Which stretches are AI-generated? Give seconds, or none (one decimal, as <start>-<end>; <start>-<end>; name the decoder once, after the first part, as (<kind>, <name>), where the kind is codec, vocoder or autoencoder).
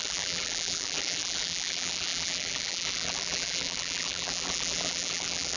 0.0-5.6 (vocoder, BigVGAN v2)